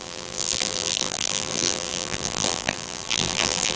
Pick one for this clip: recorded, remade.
remade